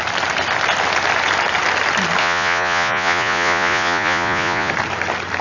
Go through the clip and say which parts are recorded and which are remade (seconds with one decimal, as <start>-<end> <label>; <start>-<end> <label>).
0.0-2.2 recorded; 2.2-4.7 remade; 4.7-5.4 recorded